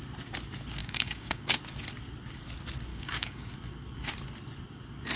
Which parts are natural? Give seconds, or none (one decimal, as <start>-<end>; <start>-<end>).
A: 0.0-0.8; 1.6-2.9; 3.5-5.2